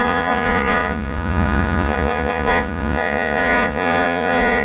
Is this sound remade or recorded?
remade